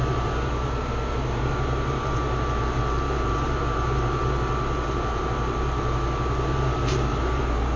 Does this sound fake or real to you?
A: fake